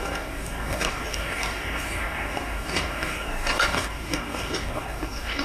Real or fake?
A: fake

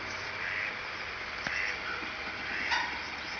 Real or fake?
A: real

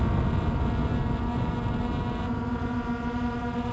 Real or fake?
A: real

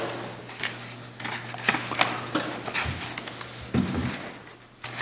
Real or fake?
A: real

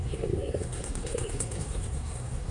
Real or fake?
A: fake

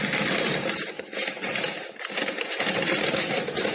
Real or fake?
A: real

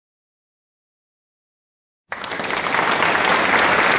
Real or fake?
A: real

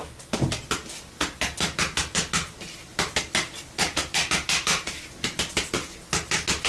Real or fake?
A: real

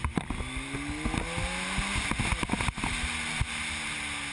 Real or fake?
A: real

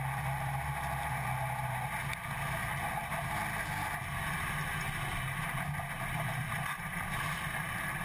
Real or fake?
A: real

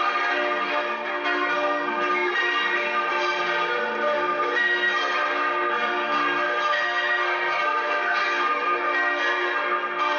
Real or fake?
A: fake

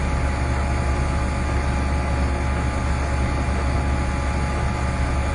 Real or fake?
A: real